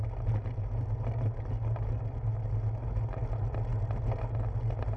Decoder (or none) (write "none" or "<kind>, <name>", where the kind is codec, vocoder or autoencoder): none